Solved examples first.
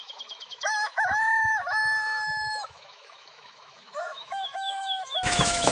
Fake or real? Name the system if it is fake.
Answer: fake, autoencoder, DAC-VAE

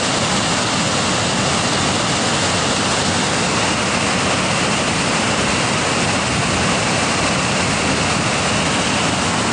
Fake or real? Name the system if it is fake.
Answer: real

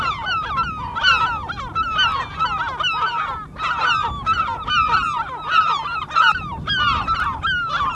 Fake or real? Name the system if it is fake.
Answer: real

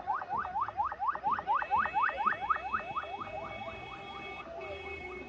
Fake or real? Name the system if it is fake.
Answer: real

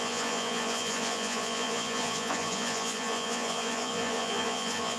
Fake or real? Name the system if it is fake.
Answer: fake, vocoder, Vocos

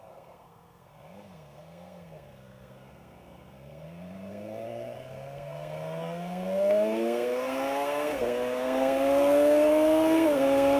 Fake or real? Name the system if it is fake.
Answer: fake, codec, SNAC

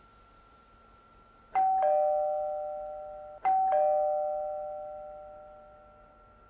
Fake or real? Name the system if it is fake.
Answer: real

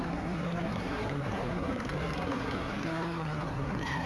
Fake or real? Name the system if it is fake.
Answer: fake, codec, SNAC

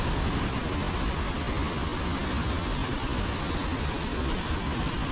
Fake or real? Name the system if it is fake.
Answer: real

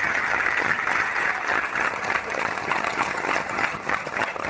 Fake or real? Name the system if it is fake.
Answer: fake, vocoder, HiFi-GAN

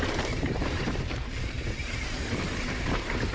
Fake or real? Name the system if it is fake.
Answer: fake, vocoder, BigVGAN v2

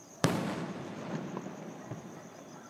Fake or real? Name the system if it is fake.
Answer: fake, vocoder, BigVGAN v2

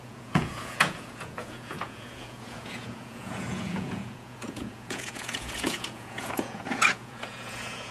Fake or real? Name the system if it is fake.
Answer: fake, vocoder, Vocos